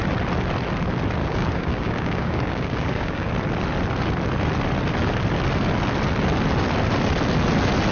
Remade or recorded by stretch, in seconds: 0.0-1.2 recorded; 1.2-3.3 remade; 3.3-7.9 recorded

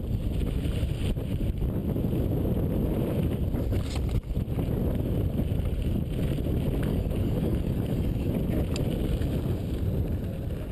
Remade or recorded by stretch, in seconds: 0.0-6.9 recorded; 6.9-8.3 remade; 8.3-10.7 recorded

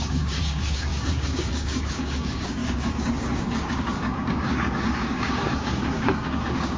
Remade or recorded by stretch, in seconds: 0.0-6.8 remade

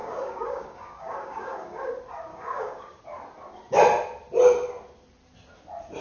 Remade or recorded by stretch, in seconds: 0.0-1.9 remade; 1.9-2.3 recorded; 2.3-3.0 remade; 3.0-6.0 recorded

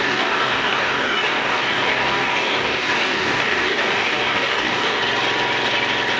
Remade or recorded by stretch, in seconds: 0.0-5.0 remade; 5.0-6.2 recorded

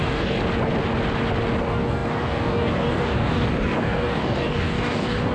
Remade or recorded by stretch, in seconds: 0.0-0.4 remade; 0.4-1.6 recorded; 1.6-5.3 remade

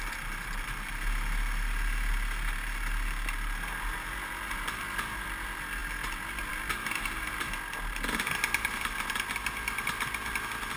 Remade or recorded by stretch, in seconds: 0.0-10.8 recorded